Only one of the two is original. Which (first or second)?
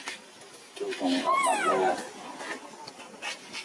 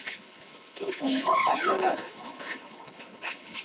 first